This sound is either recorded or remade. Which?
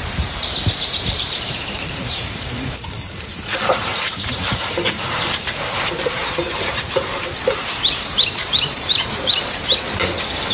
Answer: remade